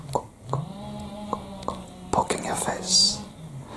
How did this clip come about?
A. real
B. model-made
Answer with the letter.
A